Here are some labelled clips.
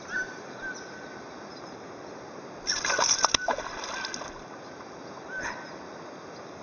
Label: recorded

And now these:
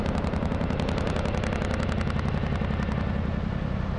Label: recorded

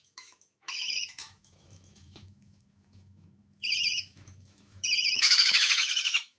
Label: remade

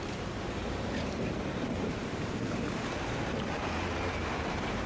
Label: remade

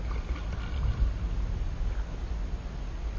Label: recorded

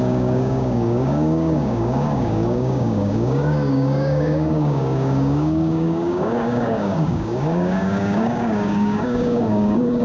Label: remade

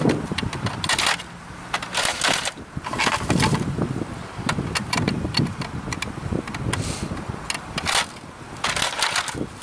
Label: recorded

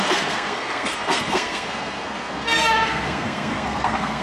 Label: remade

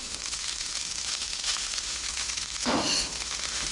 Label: remade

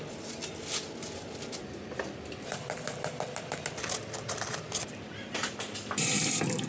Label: recorded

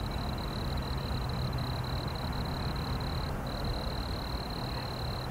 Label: recorded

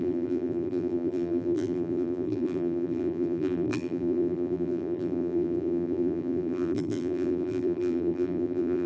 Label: remade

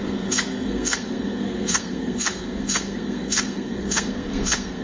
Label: remade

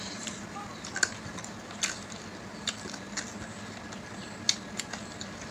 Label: recorded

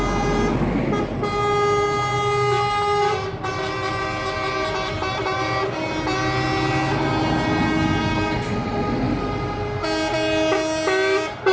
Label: recorded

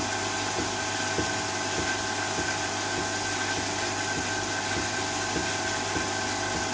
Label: recorded